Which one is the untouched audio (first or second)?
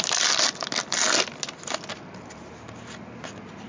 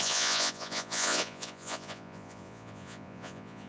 first